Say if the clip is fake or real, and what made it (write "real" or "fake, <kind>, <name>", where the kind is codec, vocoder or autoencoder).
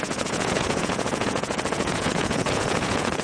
fake, vocoder, Vocos